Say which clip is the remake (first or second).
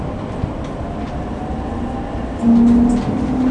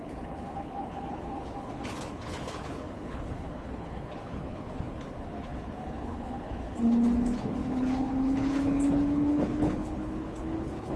second